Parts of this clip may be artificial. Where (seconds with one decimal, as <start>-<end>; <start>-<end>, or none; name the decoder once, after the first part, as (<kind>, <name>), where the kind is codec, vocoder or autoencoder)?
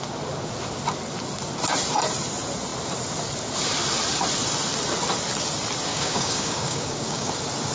5.9-7.3 (codec, DAC)